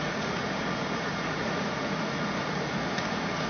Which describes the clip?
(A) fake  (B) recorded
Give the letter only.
A